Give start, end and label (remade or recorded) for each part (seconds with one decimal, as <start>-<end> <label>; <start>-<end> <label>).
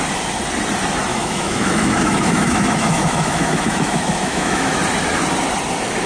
0.0-1.1 recorded; 1.1-4.8 remade; 4.8-6.1 recorded